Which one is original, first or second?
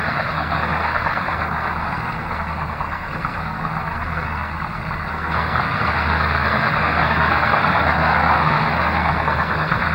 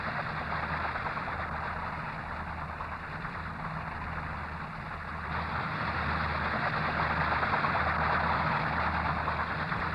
second